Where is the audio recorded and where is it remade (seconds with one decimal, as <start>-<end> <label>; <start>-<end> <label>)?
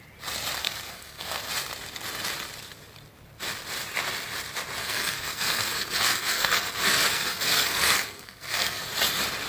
0.0-0.6 recorded; 0.6-1.5 remade; 1.5-4.8 recorded; 4.8-8.9 remade; 8.9-9.5 recorded